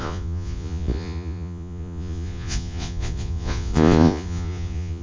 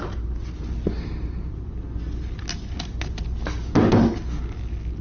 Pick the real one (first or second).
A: second